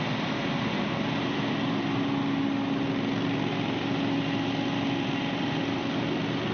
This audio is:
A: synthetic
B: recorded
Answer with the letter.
B